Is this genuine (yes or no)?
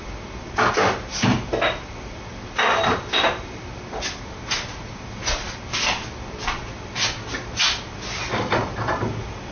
yes